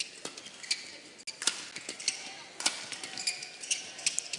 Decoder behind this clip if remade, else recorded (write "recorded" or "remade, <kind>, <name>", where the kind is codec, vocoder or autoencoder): recorded